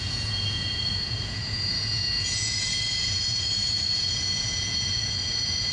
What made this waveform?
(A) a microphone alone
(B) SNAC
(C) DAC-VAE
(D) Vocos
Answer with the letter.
D